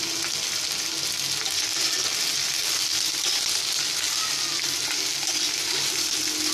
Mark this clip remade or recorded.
recorded